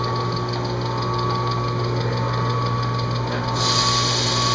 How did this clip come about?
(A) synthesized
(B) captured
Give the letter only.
B